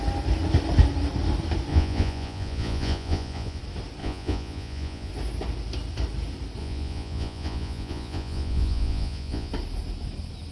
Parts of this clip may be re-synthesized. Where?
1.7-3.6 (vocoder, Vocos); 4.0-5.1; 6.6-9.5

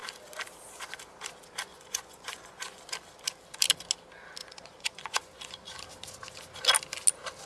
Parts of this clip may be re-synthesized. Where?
1.7-2.8 (vocoder, Vocos); 4.4-5.8

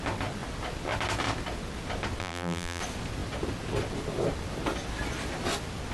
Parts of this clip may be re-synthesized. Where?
2.2-2.8 (vocoder, BigVGAN v2)

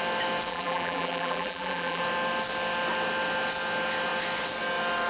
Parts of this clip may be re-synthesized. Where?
0.5-2.0 (vocoder, BigVGAN v2)

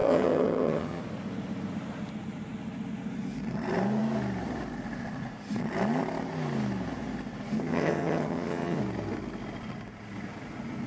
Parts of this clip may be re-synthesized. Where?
0.0-1.0 (vocoder, HiFi-GAN); 7.6-8.8